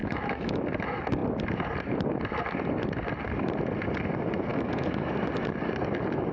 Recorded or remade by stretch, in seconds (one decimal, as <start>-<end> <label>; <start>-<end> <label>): 0.0-0.6 remade; 0.6-4.5 recorded; 4.5-5.1 remade; 5.1-6.3 recorded